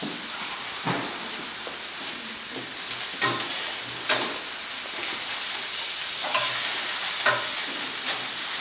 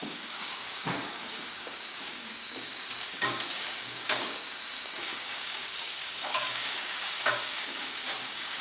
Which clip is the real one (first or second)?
first